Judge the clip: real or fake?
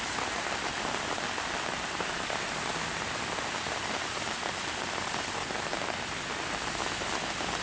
fake